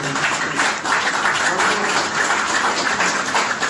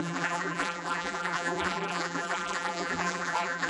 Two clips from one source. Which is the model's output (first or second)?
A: second